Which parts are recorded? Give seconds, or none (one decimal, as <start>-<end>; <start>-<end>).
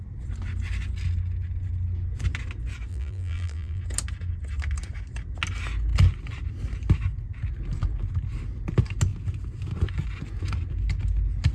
0.0-2.9; 3.8-11.5